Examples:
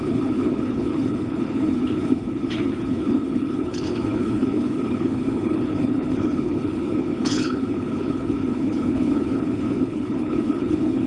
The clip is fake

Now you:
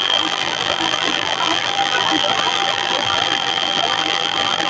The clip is fake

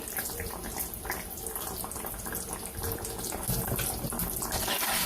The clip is real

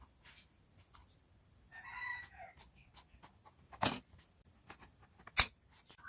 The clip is real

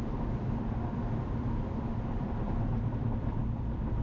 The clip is fake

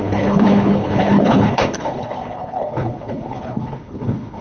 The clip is fake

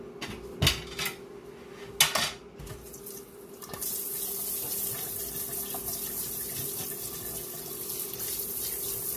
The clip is real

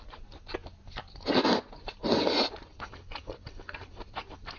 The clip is real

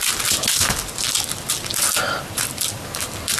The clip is real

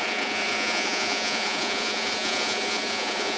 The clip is fake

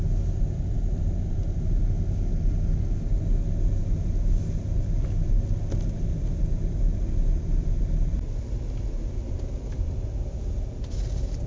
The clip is real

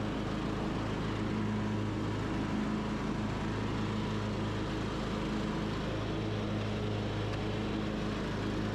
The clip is real